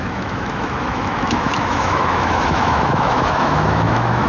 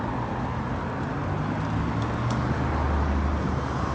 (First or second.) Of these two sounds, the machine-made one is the first